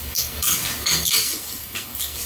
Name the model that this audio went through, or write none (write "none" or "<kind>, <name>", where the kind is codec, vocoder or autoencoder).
codec, SNAC